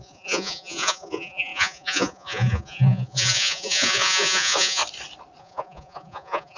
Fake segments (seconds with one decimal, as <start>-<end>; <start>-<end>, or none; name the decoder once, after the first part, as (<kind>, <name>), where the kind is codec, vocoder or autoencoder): 0.0-4.8 (vocoder, Vocos); 5.4-6.6